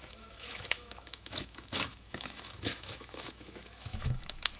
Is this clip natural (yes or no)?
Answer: no